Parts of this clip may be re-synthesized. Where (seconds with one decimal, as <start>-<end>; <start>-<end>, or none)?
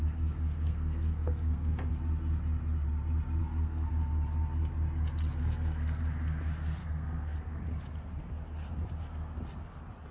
0.0-1.9; 3.4-3.9; 5.4-6.0; 6.8-7.6